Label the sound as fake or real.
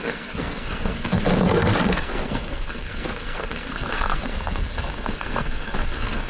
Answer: fake